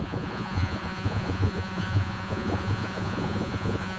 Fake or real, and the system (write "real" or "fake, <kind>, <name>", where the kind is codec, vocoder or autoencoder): fake, vocoder, Vocos